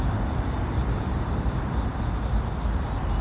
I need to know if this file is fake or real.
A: real